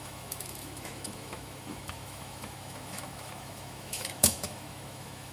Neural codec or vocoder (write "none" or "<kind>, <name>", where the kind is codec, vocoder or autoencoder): autoencoder, DAC-VAE